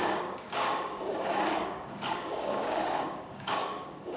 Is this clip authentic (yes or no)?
no